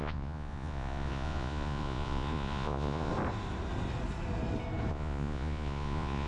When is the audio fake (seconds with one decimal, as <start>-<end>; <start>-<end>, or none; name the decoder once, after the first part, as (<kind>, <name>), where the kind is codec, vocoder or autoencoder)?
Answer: 0.0-3.1 (vocoder, Vocos); 4.9-6.3